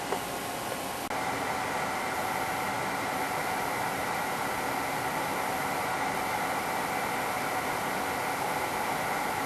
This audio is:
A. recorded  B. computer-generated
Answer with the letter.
A